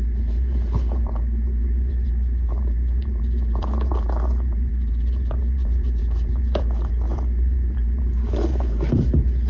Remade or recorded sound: remade